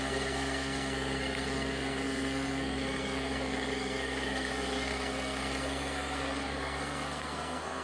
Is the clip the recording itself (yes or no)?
no